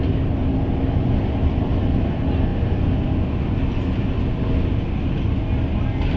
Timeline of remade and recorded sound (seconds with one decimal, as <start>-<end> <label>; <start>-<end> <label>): 0.0-6.2 recorded